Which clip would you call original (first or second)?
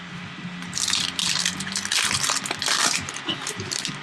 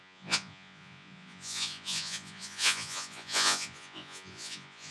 first